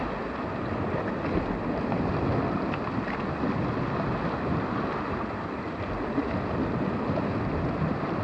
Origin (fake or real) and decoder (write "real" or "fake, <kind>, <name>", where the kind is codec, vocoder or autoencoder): real